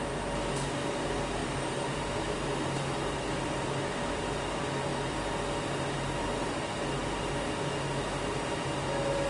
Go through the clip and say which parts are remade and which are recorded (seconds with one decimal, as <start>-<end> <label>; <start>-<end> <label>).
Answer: 0.0-1.4 recorded; 1.4-1.9 remade; 1.9-9.3 recorded